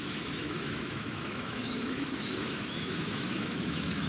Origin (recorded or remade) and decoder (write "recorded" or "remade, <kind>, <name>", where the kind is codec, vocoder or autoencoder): remade, autoencoder, DAC-VAE